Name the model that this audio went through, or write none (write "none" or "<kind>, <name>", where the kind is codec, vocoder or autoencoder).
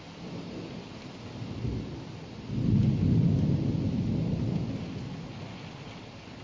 none